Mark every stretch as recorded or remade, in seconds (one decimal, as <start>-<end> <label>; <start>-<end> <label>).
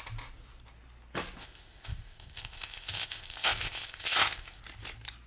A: 0.0-1.4 recorded; 1.4-4.6 remade; 4.6-5.3 recorded